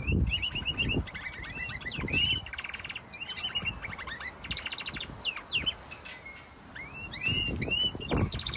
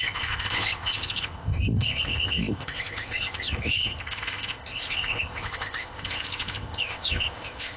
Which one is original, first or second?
first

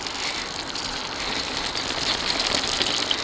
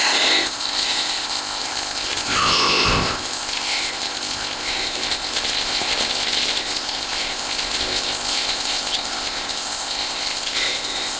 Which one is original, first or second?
first